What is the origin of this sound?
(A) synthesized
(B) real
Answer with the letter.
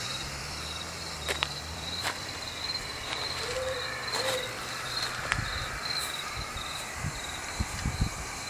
A